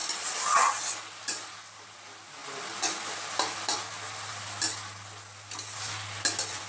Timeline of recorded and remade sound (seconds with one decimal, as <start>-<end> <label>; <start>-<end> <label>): 0.0-6.7 recorded